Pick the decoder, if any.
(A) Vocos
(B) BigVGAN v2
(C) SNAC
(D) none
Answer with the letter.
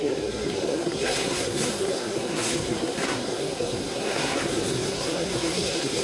C